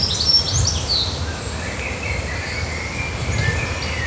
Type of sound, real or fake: real